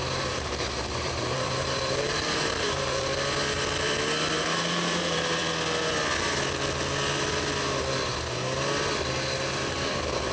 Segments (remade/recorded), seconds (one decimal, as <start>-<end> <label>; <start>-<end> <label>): 0.0-3.1 remade; 3.1-4.4 recorded; 4.4-5.4 remade; 5.4-9.5 recorded; 9.5-10.3 remade